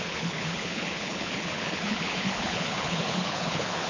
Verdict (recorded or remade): remade